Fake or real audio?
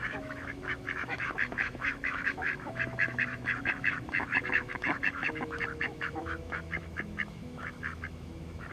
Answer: fake